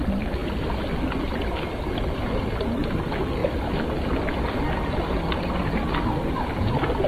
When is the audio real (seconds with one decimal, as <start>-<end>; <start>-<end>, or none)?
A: 0.0-7.1